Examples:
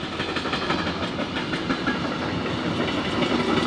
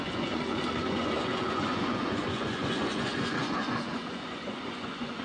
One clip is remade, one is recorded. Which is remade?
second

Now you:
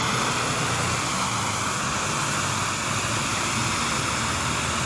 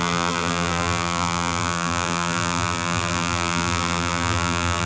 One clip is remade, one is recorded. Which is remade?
second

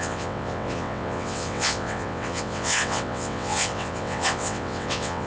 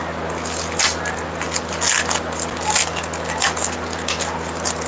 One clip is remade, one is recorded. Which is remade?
first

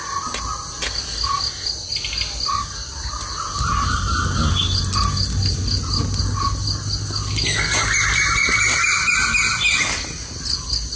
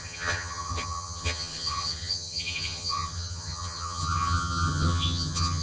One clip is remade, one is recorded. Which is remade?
second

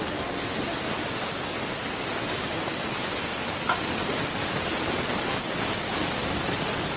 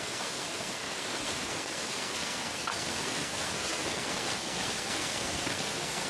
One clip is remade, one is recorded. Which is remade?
second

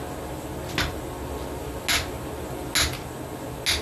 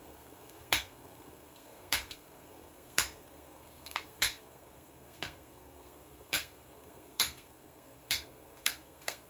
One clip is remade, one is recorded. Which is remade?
second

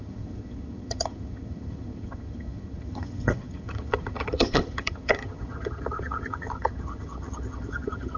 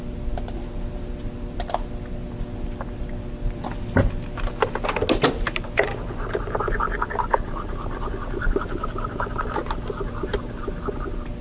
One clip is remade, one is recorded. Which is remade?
first